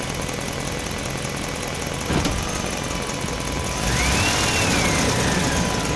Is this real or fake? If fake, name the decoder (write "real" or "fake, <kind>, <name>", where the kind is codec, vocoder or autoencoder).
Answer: real